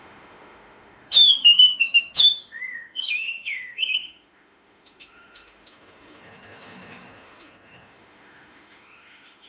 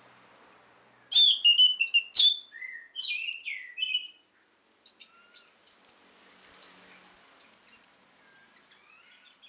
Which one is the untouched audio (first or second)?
second